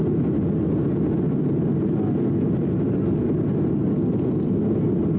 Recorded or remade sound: recorded